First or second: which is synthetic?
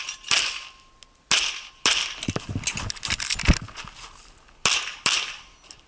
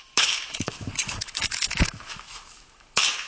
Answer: second